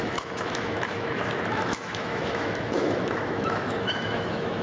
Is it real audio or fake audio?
fake